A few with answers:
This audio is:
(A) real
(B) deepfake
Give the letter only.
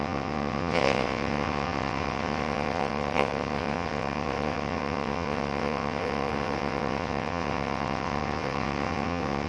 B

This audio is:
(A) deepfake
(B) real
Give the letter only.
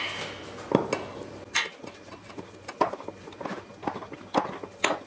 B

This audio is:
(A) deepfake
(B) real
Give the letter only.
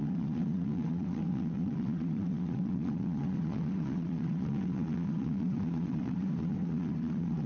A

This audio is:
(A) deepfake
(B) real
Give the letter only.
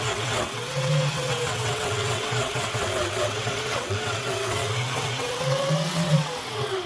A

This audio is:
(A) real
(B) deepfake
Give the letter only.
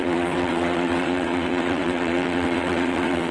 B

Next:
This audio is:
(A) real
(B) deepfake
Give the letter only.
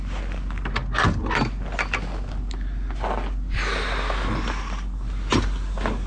A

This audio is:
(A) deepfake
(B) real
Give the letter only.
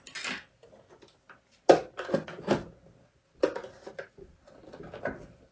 B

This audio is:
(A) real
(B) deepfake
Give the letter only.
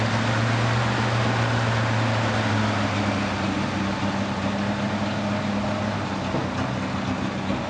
A